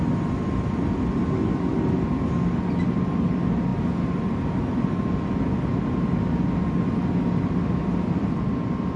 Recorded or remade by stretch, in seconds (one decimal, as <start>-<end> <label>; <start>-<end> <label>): 0.0-9.0 recorded